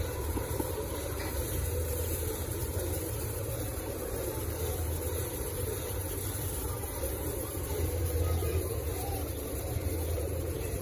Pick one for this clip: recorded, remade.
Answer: remade